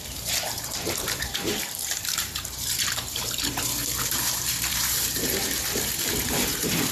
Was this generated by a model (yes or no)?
yes